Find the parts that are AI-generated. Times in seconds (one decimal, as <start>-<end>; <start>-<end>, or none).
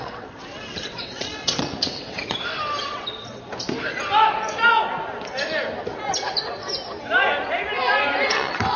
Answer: 0.0-2.2; 2.8-3.3; 8.3-8.8